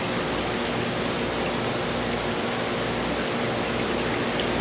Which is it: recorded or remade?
recorded